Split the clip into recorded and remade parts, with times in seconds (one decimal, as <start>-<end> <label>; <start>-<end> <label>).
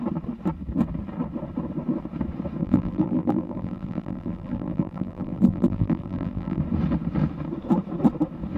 0.0-2.6 recorded; 2.6-6.6 remade; 6.6-8.6 recorded